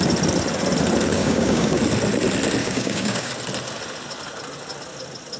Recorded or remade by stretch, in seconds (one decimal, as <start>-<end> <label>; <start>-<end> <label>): 0.0-1.1 recorded; 1.1-1.8 remade; 1.8-2.6 recorded; 2.6-3.3 remade; 3.3-5.4 recorded